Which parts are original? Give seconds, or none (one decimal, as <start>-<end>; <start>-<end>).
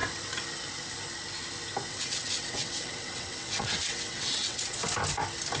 0.0-1.9; 4.8-5.6